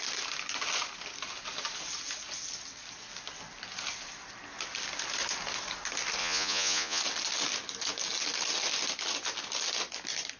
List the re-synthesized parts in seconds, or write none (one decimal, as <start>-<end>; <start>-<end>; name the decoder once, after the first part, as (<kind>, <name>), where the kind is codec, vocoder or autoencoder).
6.2-7.0 (vocoder, Vocos)